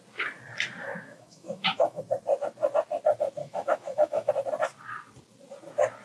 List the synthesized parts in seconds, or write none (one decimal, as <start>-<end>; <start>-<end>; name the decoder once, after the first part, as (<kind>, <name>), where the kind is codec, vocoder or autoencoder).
0.8-2.0 (autoencoder, DAC-VAE); 3.4-4.3